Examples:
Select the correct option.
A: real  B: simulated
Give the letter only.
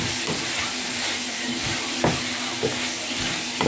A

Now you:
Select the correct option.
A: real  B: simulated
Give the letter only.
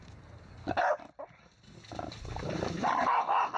A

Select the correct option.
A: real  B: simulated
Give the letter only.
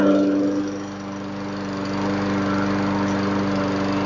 A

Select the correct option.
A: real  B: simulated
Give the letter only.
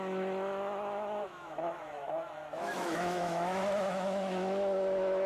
B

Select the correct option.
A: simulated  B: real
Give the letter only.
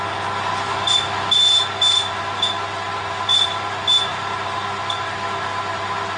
B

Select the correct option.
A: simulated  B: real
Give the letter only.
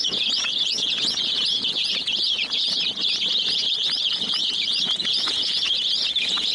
A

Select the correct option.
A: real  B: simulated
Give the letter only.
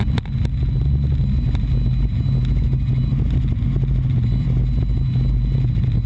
A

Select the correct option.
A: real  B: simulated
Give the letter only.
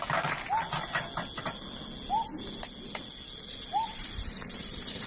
A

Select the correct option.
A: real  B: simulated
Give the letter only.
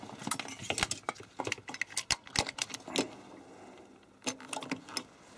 A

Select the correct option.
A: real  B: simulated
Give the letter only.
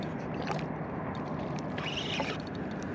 A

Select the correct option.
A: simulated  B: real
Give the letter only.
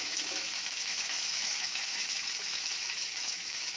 A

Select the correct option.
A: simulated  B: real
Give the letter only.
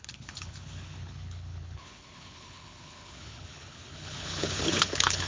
A